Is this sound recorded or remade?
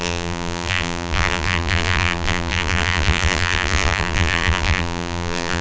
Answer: remade